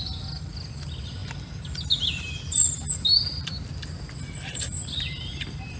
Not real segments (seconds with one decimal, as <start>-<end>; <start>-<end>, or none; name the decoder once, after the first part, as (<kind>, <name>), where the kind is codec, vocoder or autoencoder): none